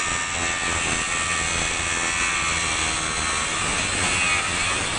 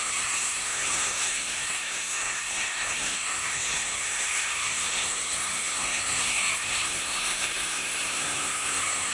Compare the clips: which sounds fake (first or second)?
second